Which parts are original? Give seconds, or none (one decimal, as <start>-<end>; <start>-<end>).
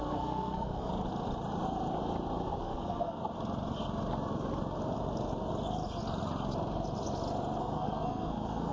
0.9-2.6; 3.2-7.6